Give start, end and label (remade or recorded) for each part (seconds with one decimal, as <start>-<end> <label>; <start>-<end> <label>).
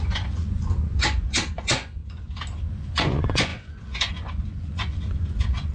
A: 0.0-2.0 remade; 2.0-2.6 recorded; 2.6-5.7 remade